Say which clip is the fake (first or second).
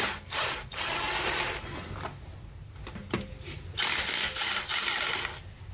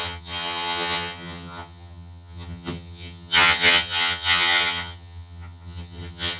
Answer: second